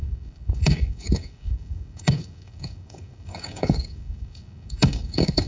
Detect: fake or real fake